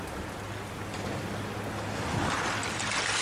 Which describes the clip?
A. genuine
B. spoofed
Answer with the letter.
A